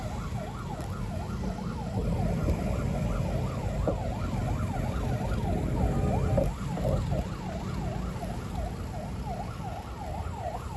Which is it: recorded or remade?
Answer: recorded